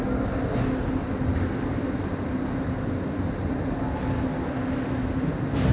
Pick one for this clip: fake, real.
real